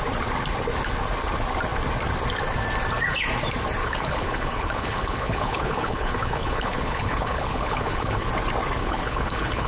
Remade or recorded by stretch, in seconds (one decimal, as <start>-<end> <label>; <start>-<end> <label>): 0.0-3.8 recorded; 3.8-8.3 remade; 8.3-8.8 recorded; 8.8-9.7 remade